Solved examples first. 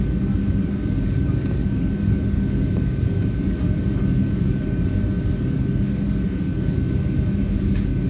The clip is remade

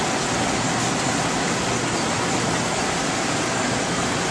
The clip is recorded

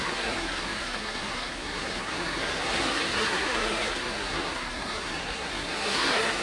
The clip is remade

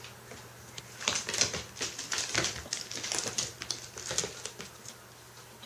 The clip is recorded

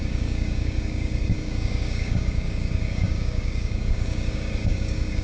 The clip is remade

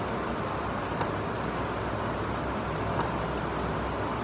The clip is recorded